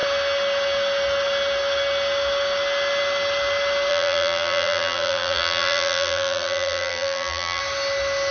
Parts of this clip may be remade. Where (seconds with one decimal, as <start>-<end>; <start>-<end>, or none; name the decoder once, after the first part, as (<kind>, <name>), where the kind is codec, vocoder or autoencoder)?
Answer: 3.9-7.6 (vocoder, BigVGAN v2)